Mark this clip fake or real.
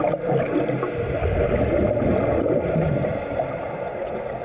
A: real